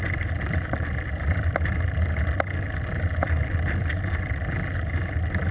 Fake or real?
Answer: real